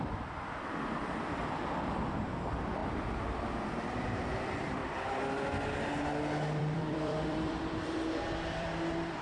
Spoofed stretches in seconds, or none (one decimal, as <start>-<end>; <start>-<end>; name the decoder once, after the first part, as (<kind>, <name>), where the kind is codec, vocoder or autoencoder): 0.0-2.8 (vocoder, BigVGAN v2); 3.8-4.8; 6.6-9.2